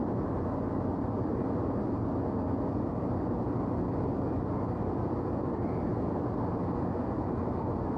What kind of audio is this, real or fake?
real